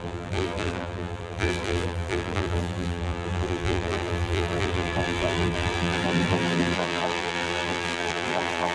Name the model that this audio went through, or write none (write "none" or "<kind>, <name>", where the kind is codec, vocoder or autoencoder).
vocoder, BigVGAN v2